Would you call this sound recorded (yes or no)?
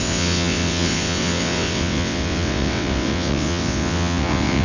no